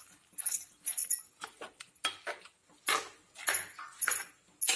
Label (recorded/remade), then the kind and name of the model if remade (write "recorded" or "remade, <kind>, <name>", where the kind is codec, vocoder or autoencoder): recorded